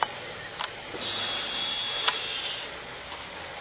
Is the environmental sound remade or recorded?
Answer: recorded